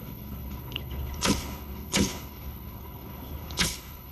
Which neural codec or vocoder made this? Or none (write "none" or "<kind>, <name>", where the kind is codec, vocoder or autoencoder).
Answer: codec, HILCodec